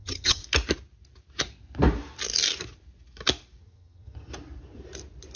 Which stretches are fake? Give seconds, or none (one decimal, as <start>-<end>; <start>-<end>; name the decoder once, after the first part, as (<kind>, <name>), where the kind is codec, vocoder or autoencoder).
0.0-0.4 (vocoder, HiFi-GAN); 3.6-4.3